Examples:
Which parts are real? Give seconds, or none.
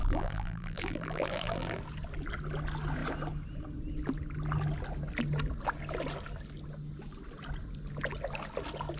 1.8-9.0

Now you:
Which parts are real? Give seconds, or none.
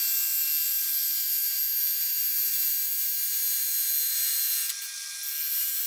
0.0-5.9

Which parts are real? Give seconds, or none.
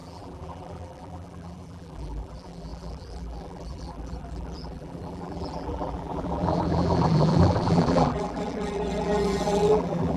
none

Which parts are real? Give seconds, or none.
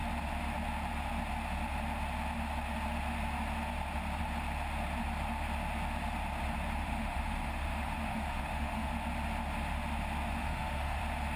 0.0-6.8; 8.9-10.4; 11.0-11.4